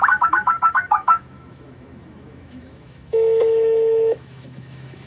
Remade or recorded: remade